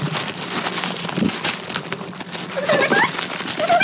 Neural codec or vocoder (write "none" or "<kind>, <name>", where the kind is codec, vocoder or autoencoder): vocoder, BigVGAN v2